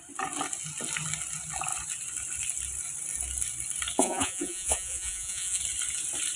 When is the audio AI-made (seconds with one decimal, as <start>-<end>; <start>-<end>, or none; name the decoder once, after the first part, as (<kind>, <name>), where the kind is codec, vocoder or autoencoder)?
4.0-5.6 (vocoder, Vocos)